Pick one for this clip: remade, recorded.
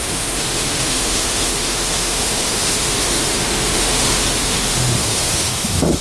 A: remade